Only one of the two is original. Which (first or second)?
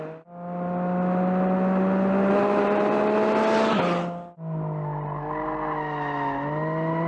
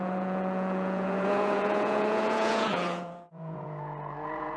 first